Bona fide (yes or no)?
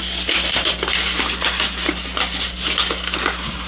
yes